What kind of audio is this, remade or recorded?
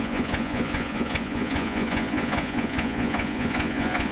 remade